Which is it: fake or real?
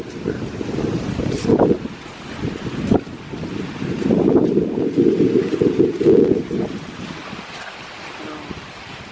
real